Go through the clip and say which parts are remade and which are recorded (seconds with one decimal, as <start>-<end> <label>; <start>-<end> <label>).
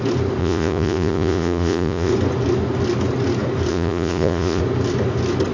0.0-0.4 recorded; 0.4-2.1 remade; 2.1-3.7 recorded; 3.7-4.6 remade; 4.6-5.5 recorded